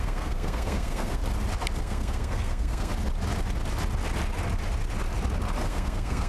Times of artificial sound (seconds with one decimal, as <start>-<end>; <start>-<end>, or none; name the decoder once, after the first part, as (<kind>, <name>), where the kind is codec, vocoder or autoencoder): 0.0-1.2 (codec, SNAC); 1.8-2.9; 5.6-6.3